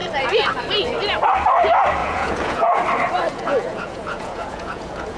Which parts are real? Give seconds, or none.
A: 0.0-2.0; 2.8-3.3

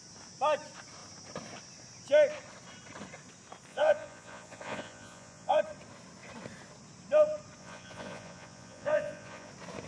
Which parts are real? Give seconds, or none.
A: 0.0-3.7; 5.6-7.6; 9.5-9.9

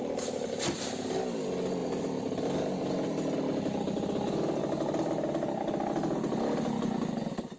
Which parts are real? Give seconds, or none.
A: 0.0-7.6

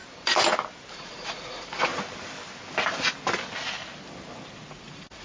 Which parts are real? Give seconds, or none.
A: 0.0-0.9; 1.9-4.7

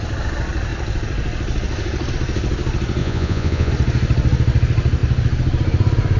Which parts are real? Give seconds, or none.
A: 0.0-3.0; 3.7-6.2

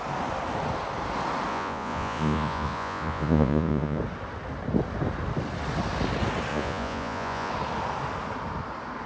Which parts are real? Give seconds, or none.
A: 0.0-1.5; 4.0-6.5; 7.5-9.1

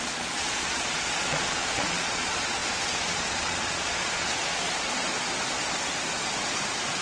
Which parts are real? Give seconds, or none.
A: 5.1-7.0

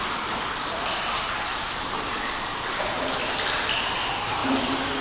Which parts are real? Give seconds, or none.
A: 0.0-5.0